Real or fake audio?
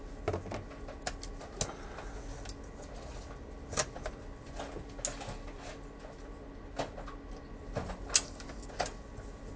real